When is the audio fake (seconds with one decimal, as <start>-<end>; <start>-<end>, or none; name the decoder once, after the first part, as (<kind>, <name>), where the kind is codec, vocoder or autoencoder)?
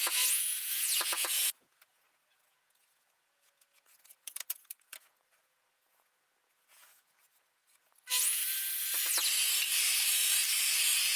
0.0-8.4 (vocoder, Vocos)